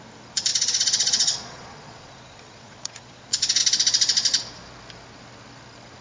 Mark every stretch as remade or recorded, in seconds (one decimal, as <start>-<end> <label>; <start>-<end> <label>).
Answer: 0.0-0.5 recorded; 0.5-3.6 remade; 3.6-6.0 recorded